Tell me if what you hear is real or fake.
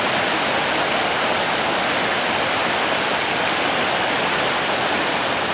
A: real